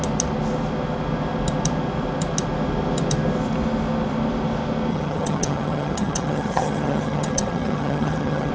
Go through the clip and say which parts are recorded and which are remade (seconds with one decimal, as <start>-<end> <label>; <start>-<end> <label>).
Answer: 0.0-4.9 recorded; 4.9-8.5 remade